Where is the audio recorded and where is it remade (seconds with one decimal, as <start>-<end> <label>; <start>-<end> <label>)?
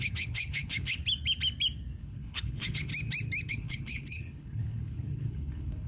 0.0-1.0 remade; 1.0-2.0 recorded; 2.0-2.9 remade; 2.9-3.5 recorded; 3.5-5.9 remade